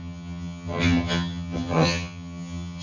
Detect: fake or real fake